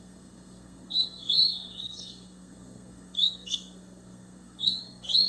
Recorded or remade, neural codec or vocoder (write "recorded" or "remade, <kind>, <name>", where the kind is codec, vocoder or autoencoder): remade, codec, SNAC